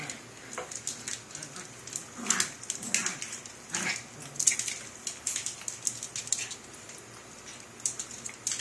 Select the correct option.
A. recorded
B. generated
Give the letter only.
A